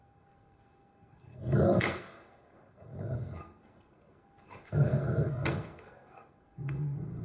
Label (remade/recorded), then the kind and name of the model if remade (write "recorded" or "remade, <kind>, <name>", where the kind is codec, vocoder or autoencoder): remade, codec, SNAC